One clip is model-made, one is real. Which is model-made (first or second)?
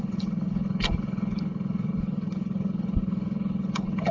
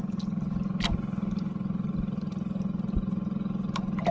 first